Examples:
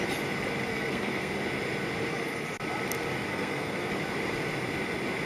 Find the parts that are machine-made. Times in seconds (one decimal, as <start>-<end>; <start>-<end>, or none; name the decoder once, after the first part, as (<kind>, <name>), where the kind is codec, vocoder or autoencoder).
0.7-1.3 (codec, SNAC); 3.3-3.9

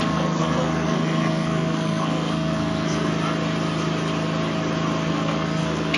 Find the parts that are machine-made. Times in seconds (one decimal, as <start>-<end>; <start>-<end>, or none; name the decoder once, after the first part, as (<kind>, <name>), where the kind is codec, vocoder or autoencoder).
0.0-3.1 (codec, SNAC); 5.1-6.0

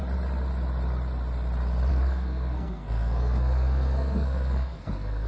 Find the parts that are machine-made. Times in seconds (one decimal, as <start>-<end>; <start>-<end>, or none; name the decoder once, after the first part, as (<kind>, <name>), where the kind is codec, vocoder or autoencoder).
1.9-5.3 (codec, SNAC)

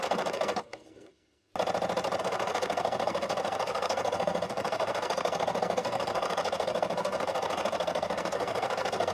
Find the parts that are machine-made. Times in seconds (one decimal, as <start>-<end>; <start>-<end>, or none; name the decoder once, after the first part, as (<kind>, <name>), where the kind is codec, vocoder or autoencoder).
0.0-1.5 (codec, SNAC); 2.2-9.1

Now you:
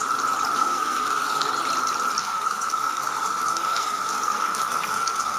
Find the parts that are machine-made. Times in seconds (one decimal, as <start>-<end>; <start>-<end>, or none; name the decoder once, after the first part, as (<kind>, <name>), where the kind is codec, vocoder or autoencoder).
0.6-1.5 (codec, SNAC); 2.2-5.4

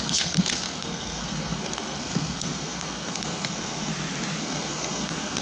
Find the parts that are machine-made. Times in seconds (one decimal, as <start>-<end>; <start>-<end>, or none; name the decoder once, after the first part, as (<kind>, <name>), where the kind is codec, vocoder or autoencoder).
0.0-3.9 (codec, SNAC); 4.4-5.4

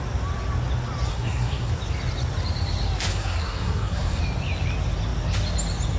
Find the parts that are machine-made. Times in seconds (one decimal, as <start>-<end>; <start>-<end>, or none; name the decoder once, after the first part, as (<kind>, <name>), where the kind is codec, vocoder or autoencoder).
1.1-1.7 (codec, SNAC); 3.1-4.2